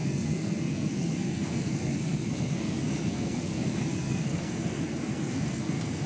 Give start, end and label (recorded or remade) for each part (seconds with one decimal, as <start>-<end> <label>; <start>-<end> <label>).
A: 0.0-6.1 remade